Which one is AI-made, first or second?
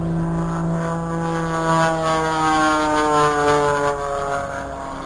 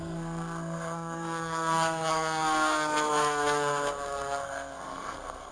second